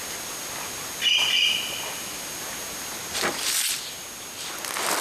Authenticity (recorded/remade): recorded